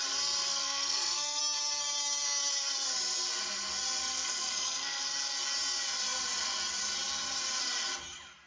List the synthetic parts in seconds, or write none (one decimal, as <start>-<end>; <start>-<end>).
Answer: 0.5-1.4; 4.0-5.0